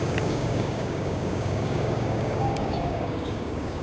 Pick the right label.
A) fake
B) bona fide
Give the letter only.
A